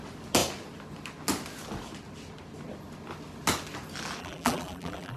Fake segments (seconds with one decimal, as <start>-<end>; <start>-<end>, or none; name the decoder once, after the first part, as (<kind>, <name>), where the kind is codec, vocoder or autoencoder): 4.2-5.2 (vocoder, BigVGAN v2)